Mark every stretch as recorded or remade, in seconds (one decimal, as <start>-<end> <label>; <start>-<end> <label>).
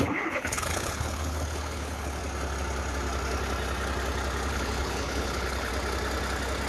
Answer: 0.0-2.2 remade; 2.2-4.5 recorded; 4.5-5.7 remade; 5.7-6.7 recorded